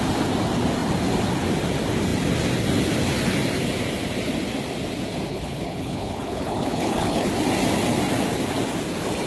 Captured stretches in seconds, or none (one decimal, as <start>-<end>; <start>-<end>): 0.0-5.3; 7.3-9.3